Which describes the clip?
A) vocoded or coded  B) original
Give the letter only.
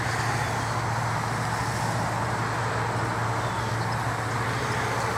B